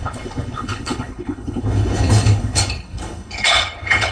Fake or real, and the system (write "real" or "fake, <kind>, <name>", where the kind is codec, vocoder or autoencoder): fake, codec, HILCodec